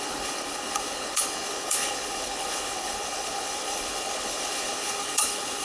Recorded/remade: remade